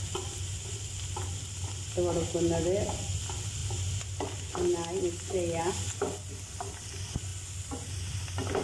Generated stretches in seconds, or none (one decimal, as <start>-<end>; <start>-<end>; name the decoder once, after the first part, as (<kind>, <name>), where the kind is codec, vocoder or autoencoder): none